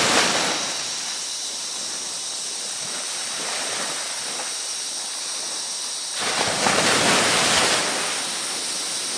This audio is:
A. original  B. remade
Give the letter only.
A